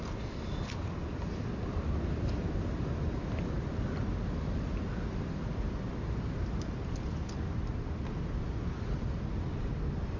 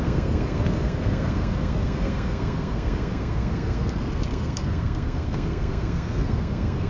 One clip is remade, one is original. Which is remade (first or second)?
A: second